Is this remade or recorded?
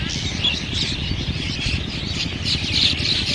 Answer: recorded